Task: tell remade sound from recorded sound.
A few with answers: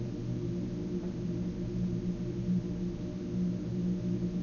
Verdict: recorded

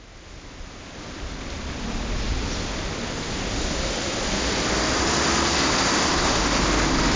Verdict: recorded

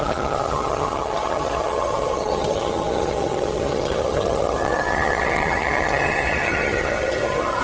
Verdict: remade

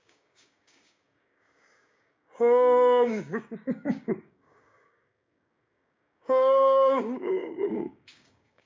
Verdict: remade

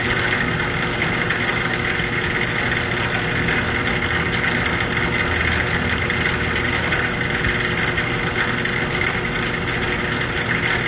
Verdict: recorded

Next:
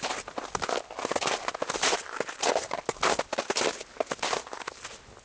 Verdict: recorded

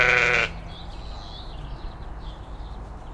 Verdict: recorded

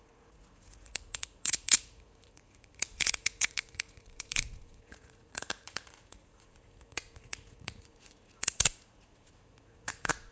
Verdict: remade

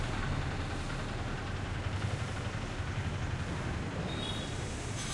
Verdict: recorded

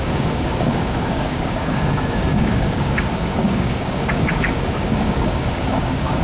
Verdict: remade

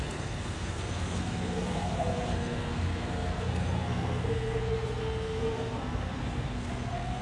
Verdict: remade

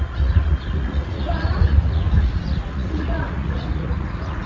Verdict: remade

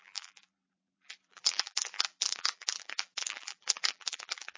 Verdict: remade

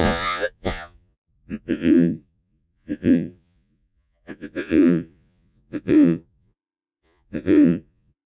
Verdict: remade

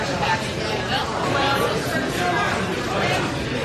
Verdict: remade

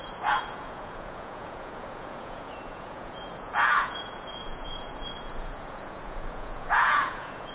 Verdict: remade